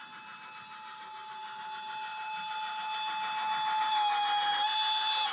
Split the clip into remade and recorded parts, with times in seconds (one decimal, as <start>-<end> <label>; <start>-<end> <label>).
0.0-5.3 recorded

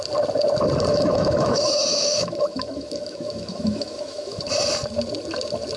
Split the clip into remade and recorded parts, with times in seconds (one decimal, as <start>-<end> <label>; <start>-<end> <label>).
0.0-0.9 recorded; 0.9-4.4 remade; 4.4-5.8 recorded

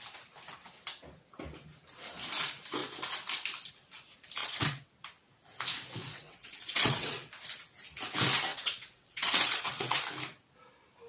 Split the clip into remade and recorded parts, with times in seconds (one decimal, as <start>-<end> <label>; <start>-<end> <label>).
0.0-4.4 recorded; 4.4-4.9 remade; 4.9-6.0 recorded; 6.0-7.3 remade; 7.3-8.5 recorded; 8.5-10.0 remade; 10.0-11.1 recorded

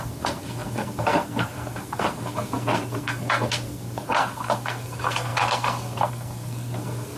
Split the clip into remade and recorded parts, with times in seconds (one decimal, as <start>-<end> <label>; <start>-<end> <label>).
0.0-7.2 remade